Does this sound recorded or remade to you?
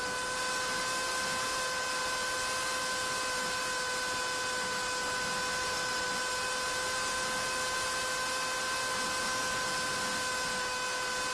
recorded